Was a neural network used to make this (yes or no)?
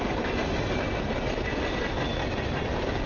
no